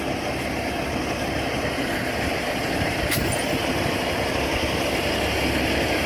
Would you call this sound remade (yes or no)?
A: no